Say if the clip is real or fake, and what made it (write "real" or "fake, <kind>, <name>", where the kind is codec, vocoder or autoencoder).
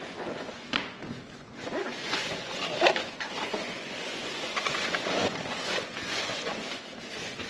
fake, vocoder, Vocos